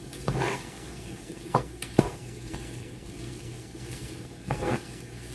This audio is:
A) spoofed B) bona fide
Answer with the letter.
A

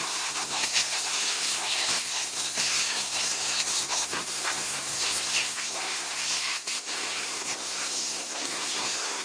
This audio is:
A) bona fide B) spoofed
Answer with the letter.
B